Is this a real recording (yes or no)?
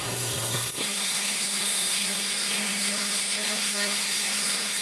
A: no